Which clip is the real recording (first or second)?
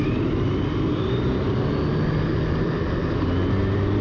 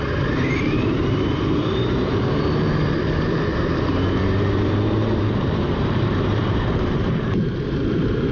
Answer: first